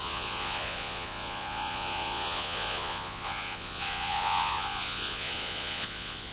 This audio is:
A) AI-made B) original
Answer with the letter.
A